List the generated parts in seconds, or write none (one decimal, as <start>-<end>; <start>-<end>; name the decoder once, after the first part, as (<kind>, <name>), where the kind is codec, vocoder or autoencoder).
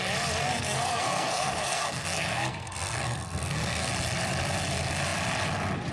0.4-3.9 (codec, SNAC)